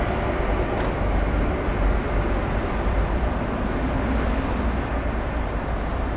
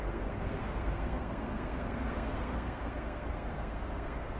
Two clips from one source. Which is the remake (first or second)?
second